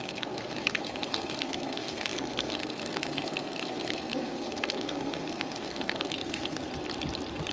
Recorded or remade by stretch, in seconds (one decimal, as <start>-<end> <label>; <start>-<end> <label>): 0.0-6.7 remade; 6.7-7.5 recorded